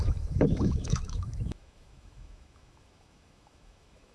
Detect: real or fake fake